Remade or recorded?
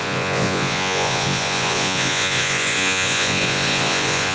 remade